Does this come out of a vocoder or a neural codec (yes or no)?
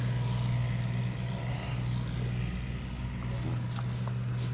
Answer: no